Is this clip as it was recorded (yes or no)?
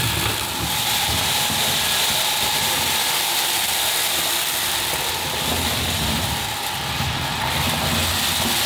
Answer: yes